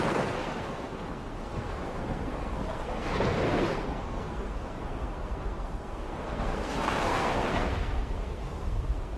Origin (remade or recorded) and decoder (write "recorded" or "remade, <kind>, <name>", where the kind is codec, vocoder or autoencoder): remade, codec, SNAC